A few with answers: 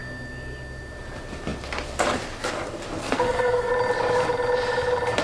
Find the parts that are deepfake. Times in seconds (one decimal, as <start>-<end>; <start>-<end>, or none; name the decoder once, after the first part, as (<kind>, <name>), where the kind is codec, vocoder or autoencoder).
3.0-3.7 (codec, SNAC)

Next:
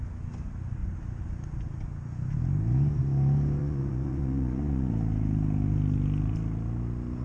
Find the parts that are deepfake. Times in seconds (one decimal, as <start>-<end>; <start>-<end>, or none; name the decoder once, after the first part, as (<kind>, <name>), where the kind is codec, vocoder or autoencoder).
3.6-4.9 (vocoder, Vocos)

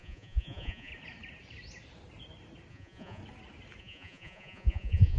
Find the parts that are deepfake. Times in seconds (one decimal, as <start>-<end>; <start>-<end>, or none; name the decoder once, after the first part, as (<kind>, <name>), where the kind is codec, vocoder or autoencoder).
0.0-0.9 (vocoder, Vocos); 2.7-3.2; 3.8-5.2

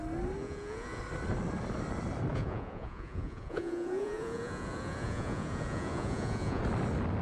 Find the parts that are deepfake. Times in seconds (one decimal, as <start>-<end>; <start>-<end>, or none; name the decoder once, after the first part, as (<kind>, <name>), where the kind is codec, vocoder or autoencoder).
0.4-1.0 (vocoder, Vocos); 2.3-6.6

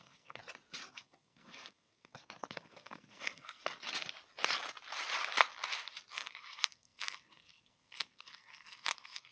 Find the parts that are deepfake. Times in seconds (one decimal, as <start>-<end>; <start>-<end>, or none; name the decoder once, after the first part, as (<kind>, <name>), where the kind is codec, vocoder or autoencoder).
0.0-0.4 (codec, SNAC); 0.9-3.6; 6.1-9.3

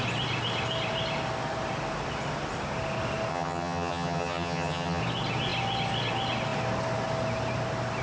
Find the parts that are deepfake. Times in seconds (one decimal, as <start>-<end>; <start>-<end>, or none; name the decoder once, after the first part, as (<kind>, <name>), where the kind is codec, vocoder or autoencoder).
3.3-5.0 (vocoder, HiFi-GAN)